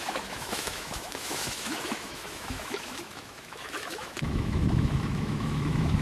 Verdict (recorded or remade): remade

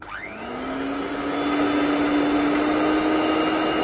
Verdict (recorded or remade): recorded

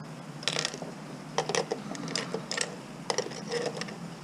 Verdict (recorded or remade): recorded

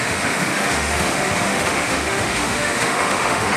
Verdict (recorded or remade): remade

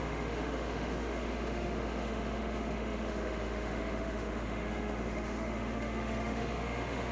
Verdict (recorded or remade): remade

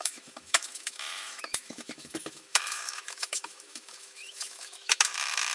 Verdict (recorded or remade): remade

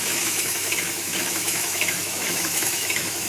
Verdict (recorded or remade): remade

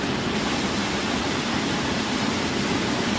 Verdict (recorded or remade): recorded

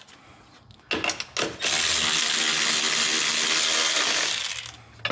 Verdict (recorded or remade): recorded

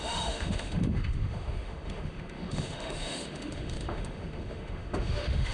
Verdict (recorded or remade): remade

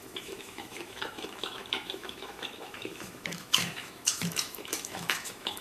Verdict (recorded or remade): remade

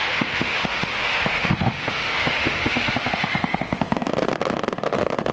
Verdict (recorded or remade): remade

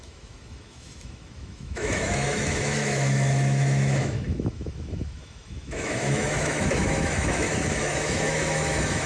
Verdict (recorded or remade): remade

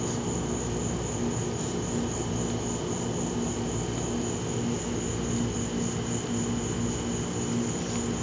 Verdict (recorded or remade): recorded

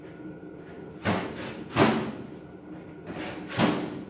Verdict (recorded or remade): recorded